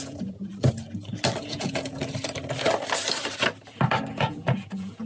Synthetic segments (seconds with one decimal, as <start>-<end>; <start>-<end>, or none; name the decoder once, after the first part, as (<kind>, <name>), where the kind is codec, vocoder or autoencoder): 0.0-0.5 (vocoder, Vocos); 1.4-2.0; 4.1-5.1